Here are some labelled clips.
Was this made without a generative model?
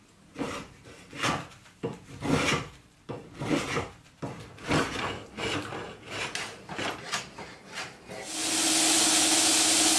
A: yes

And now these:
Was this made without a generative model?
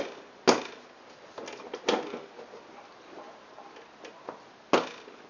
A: yes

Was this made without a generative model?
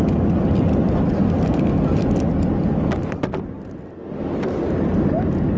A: yes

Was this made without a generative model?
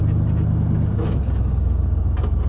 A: yes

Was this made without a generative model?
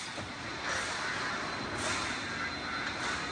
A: yes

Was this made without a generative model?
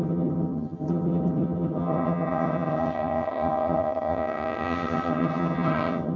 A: no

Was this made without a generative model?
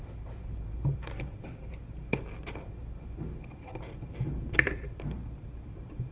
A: no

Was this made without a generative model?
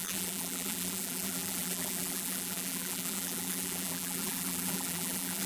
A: no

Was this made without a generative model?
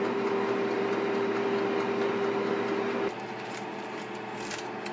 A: yes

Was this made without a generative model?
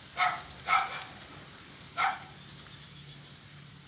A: yes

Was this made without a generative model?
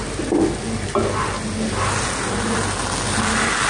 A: yes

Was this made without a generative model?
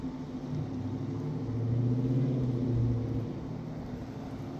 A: yes